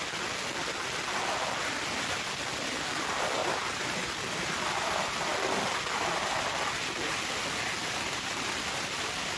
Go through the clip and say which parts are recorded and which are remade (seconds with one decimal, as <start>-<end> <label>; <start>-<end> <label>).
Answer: 0.0-3.4 recorded; 3.4-4.1 remade; 4.1-7.8 recorded; 7.8-8.5 remade; 8.5-9.4 recorded